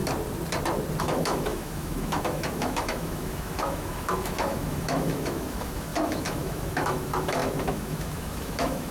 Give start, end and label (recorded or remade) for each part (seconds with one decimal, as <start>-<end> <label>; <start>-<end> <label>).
0.0-1.0 recorded; 1.0-8.9 remade